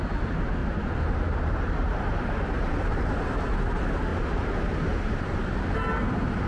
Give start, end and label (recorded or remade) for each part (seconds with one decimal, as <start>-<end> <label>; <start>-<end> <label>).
0.0-0.6 recorded; 0.6-3.5 remade; 3.5-4.1 recorded; 4.1-5.6 remade; 5.6-6.5 recorded